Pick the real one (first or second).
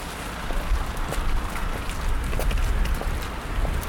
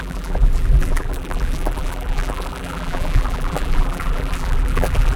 first